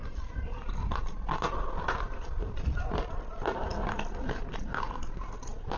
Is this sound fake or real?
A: real